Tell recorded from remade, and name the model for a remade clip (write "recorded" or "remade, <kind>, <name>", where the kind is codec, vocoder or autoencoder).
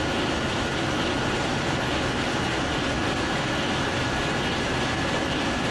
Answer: recorded